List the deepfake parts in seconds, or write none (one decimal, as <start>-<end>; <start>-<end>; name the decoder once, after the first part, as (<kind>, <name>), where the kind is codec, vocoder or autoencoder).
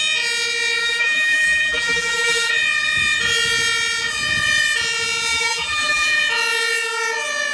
0.8-2.5 (vocoder, BigVGAN v2); 5.3-6.2